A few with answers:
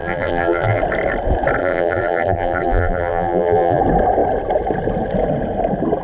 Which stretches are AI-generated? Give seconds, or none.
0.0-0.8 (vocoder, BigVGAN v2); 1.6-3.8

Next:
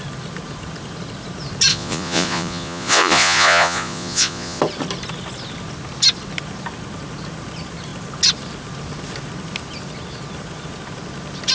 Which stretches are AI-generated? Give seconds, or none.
1.7-4.6 (vocoder, Vocos)

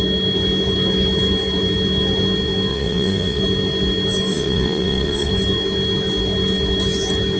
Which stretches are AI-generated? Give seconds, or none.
2.7-3.4 (vocoder, WaveNeXt); 4.3-5.3

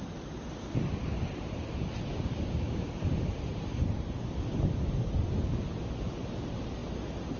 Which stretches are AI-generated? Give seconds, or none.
2.1-2.9 (codec, DAC)

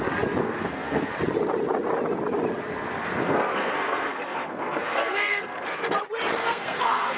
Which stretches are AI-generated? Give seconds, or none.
0.4-1.1 (codec, SNAC); 3.0-6.0; 6.4-7.2

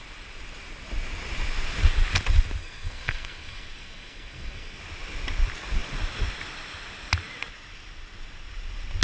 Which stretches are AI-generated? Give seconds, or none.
2.6-4.8 (codec, SNAC)

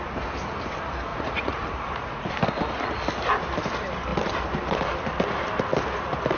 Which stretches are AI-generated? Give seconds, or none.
1.1-2.3 (vocoder, Vocos)